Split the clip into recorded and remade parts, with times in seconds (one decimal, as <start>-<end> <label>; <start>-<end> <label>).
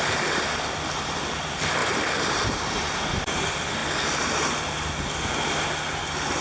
0.0-6.4 recorded